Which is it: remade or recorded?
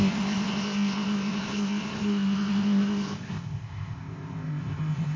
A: remade